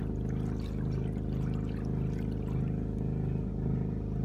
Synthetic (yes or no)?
no